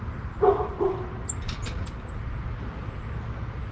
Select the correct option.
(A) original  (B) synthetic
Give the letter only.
A